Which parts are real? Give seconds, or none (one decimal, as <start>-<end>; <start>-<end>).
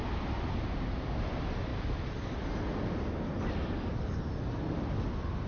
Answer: 0.0-5.5